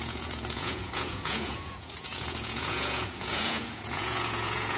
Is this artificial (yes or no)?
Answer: yes